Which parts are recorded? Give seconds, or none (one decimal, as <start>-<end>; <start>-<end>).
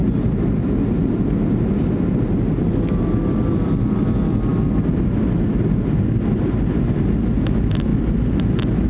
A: 0.0-8.9